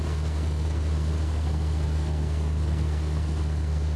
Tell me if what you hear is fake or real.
fake